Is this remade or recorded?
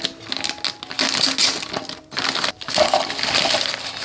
recorded